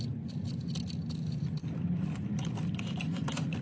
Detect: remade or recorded recorded